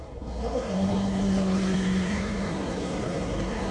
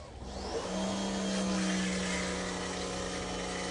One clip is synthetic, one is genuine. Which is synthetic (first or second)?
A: first